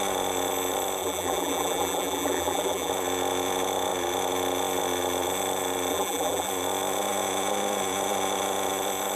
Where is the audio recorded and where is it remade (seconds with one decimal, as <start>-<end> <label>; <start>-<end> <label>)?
0.0-1.0 recorded; 1.0-2.9 remade; 2.9-5.9 recorded; 5.9-6.5 remade; 6.5-9.2 recorded